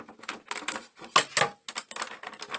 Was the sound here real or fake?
real